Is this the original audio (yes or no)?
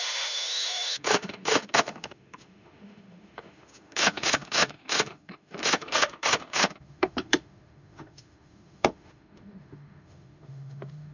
no